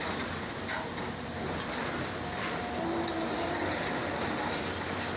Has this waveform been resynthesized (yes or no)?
yes